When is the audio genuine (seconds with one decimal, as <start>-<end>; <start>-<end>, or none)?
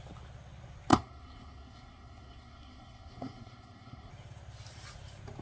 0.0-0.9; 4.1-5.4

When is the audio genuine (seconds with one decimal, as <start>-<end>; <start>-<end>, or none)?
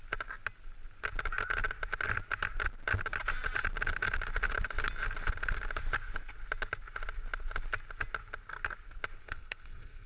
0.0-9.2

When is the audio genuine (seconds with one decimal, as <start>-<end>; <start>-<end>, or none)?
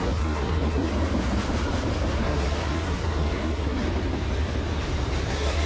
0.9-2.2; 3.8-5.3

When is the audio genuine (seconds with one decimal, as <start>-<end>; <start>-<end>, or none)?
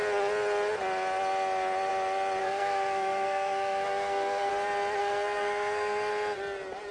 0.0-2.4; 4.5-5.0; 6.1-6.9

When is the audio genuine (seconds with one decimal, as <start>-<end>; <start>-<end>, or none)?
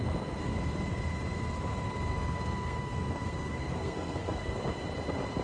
0.0-2.1; 4.6-5.4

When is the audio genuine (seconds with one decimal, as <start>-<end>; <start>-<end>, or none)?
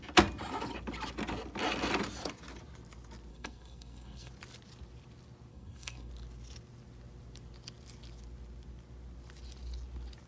0.0-3.3; 4.3-5.5; 6.1-10.3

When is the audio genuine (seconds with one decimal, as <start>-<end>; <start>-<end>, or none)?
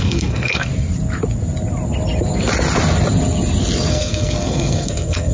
0.7-3.9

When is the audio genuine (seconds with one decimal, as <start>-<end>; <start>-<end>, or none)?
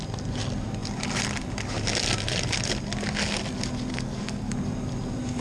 0.0-3.9; 4.5-5.4